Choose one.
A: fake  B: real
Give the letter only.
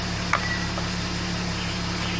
B